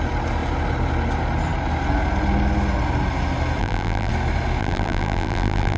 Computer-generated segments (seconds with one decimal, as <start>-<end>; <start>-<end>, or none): 3.6-4.1; 4.6-5.8